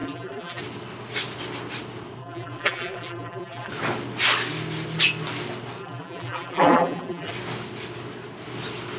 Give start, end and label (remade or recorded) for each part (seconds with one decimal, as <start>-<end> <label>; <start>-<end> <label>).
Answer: 0.0-0.6 remade; 0.6-2.2 recorded; 2.2-3.7 remade; 3.7-5.8 recorded; 5.8-7.3 remade; 7.3-9.0 recorded